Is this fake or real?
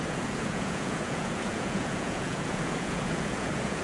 fake